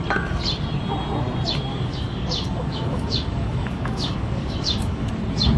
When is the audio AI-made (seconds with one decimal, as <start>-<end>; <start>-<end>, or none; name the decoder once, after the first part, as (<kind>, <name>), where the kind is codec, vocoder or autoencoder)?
1.7-5.1 (codec, DAC)